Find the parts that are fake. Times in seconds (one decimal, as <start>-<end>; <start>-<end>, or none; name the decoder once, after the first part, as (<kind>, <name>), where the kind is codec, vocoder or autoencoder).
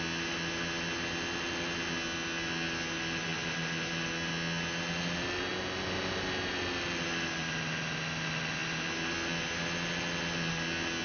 none